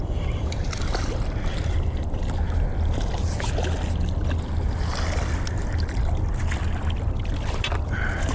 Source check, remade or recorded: recorded